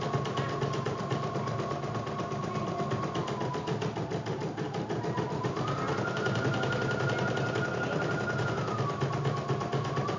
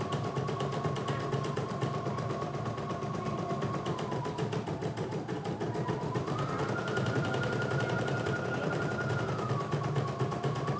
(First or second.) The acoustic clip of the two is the first